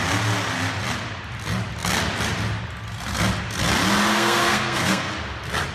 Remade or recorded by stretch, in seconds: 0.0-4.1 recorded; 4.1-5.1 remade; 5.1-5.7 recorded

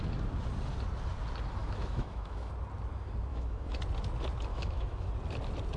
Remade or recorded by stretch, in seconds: 0.0-1.6 recorded; 1.6-2.5 remade; 2.5-3.3 recorded; 3.3-3.8 remade; 3.8-4.5 recorded; 4.5-5.1 remade; 5.1-5.8 recorded

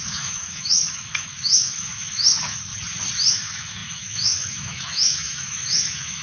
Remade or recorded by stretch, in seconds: 0.0-2.7 remade; 2.7-3.3 recorded; 3.3-6.2 remade